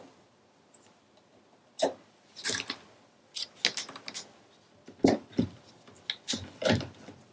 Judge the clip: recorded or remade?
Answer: recorded